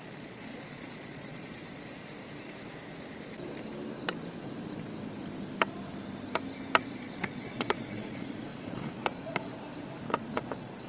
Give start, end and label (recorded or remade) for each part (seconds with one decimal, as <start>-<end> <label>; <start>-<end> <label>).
0.0-1.6 remade; 1.6-6.8 recorded; 6.8-9.5 remade; 9.5-10.1 recorded; 10.1-10.9 remade